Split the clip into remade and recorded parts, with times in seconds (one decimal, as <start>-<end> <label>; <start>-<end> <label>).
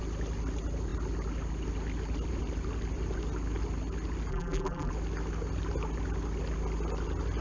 0.0-4.3 recorded; 4.3-4.9 remade; 4.9-7.4 recorded